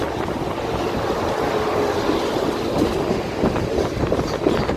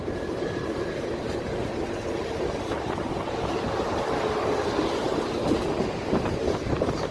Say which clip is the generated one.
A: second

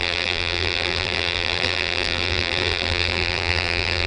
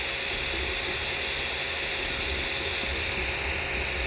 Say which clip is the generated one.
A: first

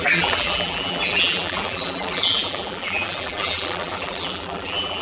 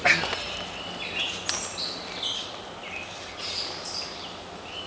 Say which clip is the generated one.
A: first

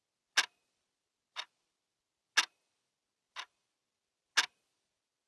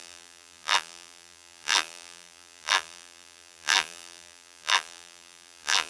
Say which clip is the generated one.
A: second